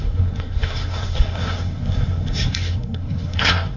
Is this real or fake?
fake